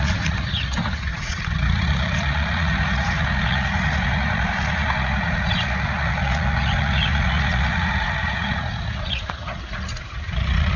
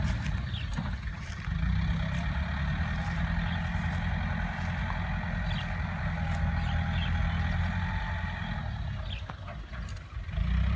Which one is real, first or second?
second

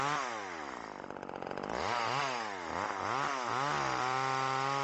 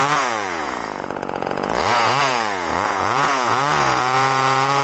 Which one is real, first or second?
first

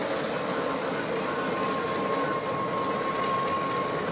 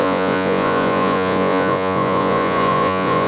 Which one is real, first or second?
first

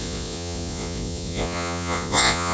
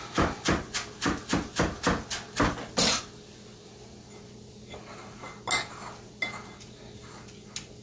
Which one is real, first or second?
second